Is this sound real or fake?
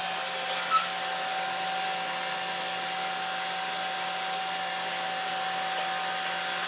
real